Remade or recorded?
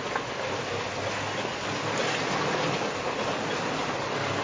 recorded